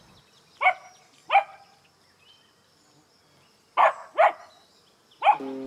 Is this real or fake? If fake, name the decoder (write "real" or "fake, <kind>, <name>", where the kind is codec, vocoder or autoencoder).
real